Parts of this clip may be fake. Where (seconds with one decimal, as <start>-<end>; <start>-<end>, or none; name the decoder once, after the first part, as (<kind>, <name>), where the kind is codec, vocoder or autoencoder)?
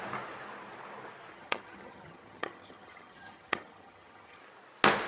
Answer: 1.3-4.4 (vocoder, HiFi-GAN)